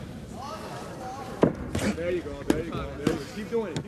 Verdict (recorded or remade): recorded